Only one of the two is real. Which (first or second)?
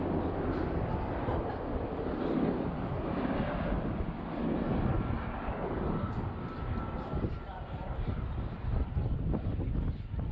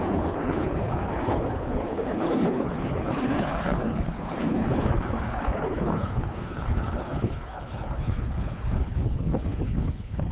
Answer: first